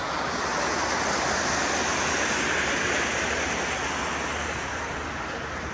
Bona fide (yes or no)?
yes